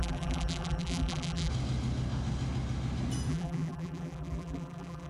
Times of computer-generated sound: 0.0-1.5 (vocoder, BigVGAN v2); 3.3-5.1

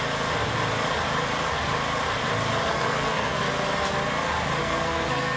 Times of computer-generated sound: 2.7-3.4 (codec, SNAC); 4.6-5.4

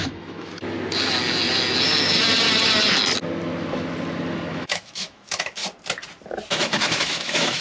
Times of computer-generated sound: 0.0-0.5 (autoencoder, DAC-VAE); 4.5-5.6; 6.5-7.6